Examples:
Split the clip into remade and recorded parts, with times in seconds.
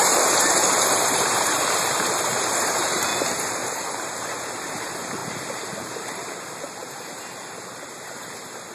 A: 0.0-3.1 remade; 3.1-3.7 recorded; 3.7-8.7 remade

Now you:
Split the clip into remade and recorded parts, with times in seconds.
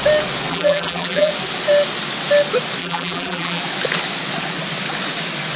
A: 0.0-0.5 recorded; 0.5-1.3 remade; 1.3-2.8 recorded; 2.8-3.6 remade; 3.6-5.6 recorded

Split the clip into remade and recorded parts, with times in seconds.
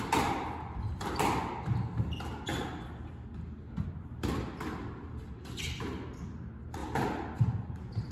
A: 0.0-6.8 recorded; 6.8-8.1 remade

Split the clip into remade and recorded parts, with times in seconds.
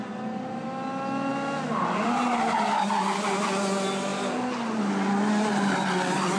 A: 0.0-4.1 recorded; 4.1-4.9 remade; 4.9-6.4 recorded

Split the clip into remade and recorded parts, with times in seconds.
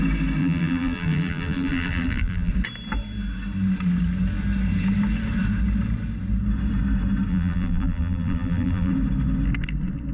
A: 0.0-0.4 recorded; 0.4-2.5 remade; 2.5-7.3 recorded; 7.3-8.9 remade; 8.9-10.1 recorded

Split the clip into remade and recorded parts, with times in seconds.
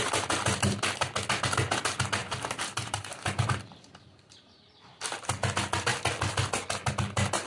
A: 0.0-2.2 recorded; 2.2-5.0 remade; 5.0-7.5 recorded